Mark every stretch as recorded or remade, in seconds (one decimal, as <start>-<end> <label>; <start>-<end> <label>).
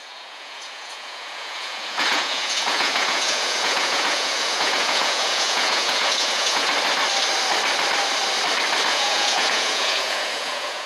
0.0-6.7 remade; 6.7-8.9 recorded; 8.9-10.9 remade